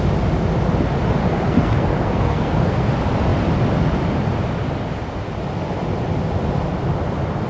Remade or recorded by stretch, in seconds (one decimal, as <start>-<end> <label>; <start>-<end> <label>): 0.0-1.2 recorded; 1.2-2.9 remade; 2.9-7.5 recorded